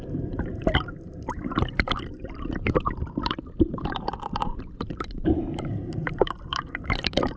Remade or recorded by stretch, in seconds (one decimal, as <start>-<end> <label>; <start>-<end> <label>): 0.0-0.6 remade; 0.6-1.3 recorded; 1.3-7.4 remade